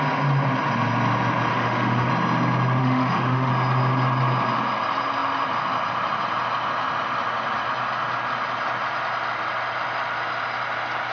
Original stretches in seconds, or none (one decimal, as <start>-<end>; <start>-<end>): 0.0-1.5; 2.1-2.8; 3.5-11.1